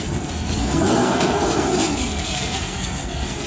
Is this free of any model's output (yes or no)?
no